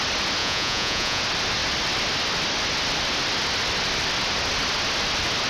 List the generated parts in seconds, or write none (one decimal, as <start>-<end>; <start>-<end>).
0.4-1.2